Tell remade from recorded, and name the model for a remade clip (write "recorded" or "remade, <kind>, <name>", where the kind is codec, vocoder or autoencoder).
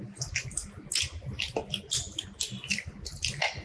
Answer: recorded